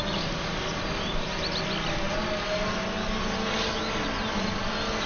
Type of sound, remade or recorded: recorded